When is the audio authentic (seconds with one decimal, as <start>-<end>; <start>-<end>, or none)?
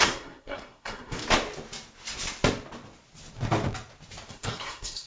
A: 1.2-4.3